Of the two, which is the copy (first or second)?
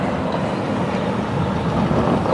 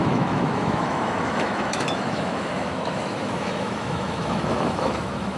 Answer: second